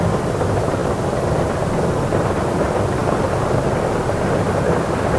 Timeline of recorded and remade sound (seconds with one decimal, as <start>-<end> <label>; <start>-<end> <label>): 0.0-5.2 recorded